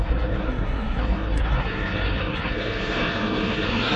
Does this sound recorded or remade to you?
remade